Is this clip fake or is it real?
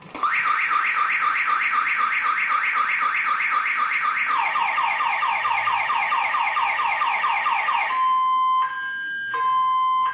real